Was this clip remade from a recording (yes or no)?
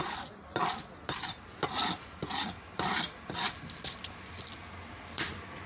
yes